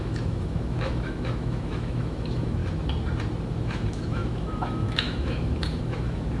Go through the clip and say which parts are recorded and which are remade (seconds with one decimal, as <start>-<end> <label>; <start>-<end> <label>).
0.0-2.6 remade; 2.6-3.6 recorded; 3.6-6.4 remade